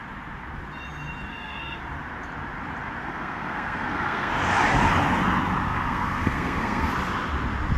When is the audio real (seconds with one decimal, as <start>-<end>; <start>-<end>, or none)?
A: 0.0-1.3; 1.8-3.0; 4.3-5.7; 6.9-7.8